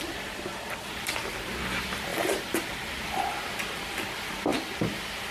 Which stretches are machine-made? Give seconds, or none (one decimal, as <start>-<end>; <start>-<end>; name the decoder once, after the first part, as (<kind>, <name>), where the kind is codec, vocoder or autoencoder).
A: none